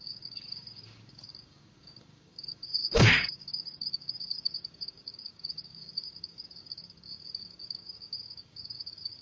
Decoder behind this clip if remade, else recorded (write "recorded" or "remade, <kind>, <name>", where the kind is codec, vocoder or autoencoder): remade, codec, DAC